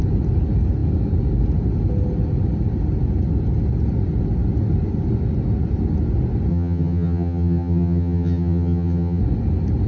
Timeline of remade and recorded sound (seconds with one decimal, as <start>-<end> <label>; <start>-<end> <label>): 0.0-6.5 recorded; 6.5-9.2 remade; 9.2-9.9 recorded